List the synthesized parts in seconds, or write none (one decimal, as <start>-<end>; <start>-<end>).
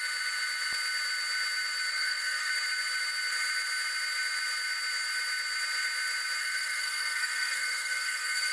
1.9-2.5; 6.4-8.5